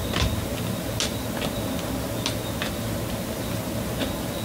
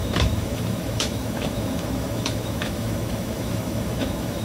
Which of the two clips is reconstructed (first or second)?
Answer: second